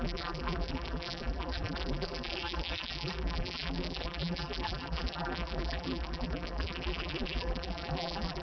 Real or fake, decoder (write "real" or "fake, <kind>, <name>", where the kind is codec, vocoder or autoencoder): fake, vocoder, BigVGAN v2